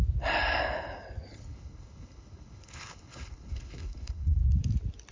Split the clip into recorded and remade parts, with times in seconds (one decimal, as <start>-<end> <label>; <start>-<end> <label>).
0.0-1.3 recorded; 1.3-4.4 remade; 4.4-5.1 recorded